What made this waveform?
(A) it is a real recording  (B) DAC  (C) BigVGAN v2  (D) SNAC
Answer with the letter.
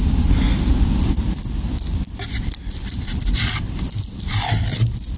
A